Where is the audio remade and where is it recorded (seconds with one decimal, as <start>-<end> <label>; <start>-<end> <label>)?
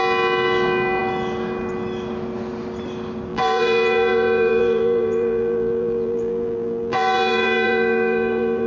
0.0-3.3 recorded; 3.3-8.7 remade